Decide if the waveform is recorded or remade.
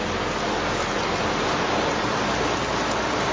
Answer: recorded